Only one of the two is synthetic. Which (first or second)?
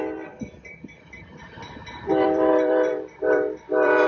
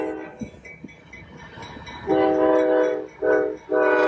first